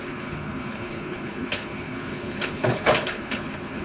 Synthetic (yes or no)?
yes